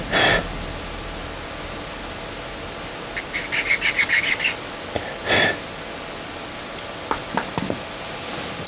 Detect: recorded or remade recorded